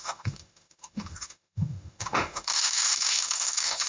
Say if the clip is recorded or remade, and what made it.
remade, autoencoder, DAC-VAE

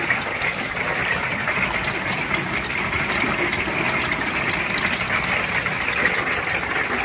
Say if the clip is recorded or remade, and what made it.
recorded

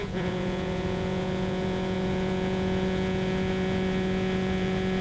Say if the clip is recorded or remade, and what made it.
remade, vocoder, Vocos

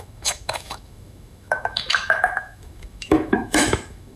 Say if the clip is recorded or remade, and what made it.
remade, autoencoder, DAC-VAE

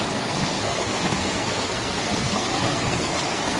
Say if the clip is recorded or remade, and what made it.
remade, codec, SNAC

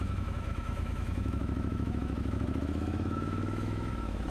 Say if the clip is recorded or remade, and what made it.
remade, autoencoder, DAC-VAE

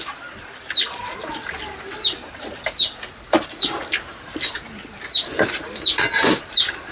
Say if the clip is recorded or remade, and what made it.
recorded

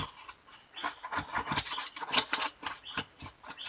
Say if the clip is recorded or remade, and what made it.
recorded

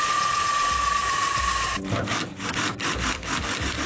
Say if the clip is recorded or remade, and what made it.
remade, vocoder, BigVGAN v2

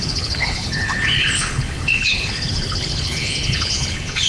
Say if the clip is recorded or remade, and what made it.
remade, codec, HILCodec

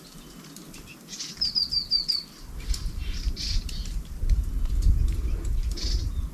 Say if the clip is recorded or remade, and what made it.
recorded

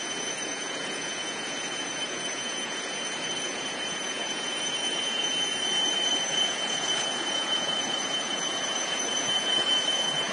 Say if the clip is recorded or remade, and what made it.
remade, vocoder, Vocos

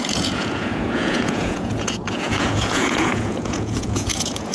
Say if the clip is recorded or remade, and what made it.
remade, vocoder, Vocos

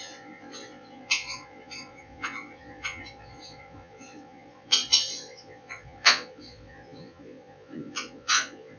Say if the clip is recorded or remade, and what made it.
remade, vocoder, Vocos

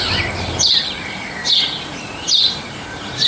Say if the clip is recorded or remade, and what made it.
remade, vocoder, BigVGAN v2